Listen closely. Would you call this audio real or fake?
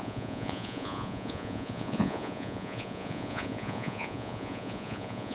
fake